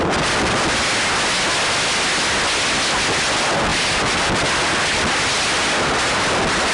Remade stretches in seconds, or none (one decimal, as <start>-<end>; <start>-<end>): none